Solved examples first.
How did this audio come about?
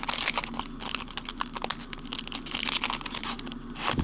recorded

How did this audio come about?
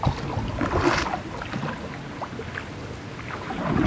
recorded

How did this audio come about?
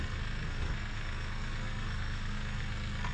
remade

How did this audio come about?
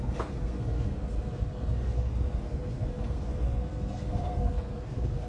remade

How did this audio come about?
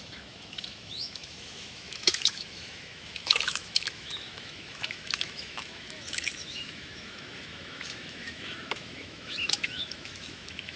remade